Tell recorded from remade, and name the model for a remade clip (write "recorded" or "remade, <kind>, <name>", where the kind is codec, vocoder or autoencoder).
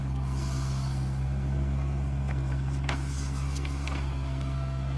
remade, codec, SNAC